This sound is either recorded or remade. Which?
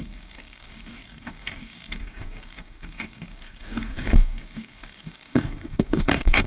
remade